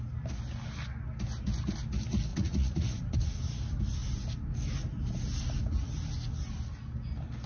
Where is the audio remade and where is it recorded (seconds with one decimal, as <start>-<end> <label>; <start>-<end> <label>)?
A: 0.0-2.3 recorded; 2.3-3.3 remade; 3.3-7.5 recorded